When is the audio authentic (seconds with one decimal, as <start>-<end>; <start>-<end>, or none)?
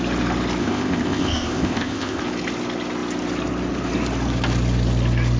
0.0-0.6; 2.2-5.4